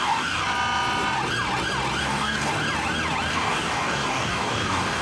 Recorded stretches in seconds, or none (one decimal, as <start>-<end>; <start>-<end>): 0.4-2.0; 2.5-3.3